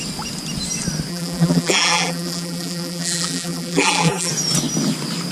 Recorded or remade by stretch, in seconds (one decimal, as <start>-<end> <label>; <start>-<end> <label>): 0.0-1.1 recorded; 1.1-4.3 remade; 4.3-5.3 recorded